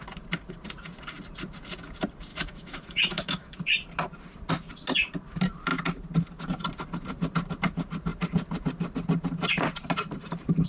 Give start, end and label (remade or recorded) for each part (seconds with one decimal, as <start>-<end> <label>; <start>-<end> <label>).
0.0-2.3 recorded; 2.3-3.6 remade; 3.6-10.7 recorded